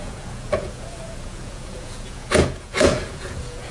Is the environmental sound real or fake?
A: fake